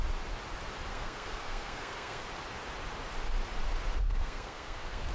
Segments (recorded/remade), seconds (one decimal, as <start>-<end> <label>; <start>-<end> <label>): 0.0-0.9 recorded; 0.9-2.2 remade; 2.2-4.0 recorded; 4.0-5.1 remade